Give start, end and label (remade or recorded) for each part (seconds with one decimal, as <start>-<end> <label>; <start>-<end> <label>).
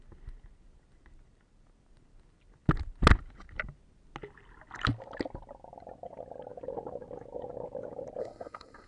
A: 0.0-8.2 recorded; 8.2-8.9 remade